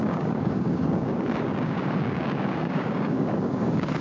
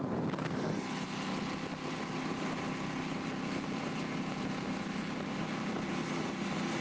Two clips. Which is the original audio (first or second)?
second